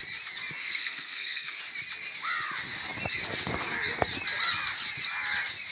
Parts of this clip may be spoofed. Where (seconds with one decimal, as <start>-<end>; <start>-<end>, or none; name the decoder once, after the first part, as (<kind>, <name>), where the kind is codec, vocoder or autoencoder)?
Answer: 0.6-1.6 (codec, SNAC)